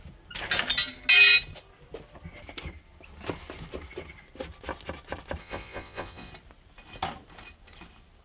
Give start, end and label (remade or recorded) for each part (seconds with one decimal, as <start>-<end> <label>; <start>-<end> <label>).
0.0-5.4 recorded; 5.4-6.3 remade; 6.3-8.2 recorded